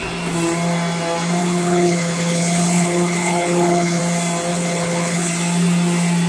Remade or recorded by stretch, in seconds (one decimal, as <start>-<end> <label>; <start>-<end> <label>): 0.0-1.4 recorded; 1.4-4.0 remade; 4.0-4.5 recorded; 4.5-5.3 remade; 5.3-6.3 recorded